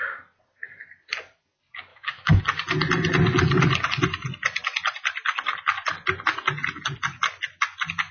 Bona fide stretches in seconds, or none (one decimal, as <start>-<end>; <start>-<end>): 0.0-1.9; 2.4-8.1